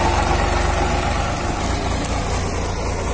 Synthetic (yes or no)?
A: no